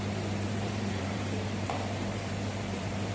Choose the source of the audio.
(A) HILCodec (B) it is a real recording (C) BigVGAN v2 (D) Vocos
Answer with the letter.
C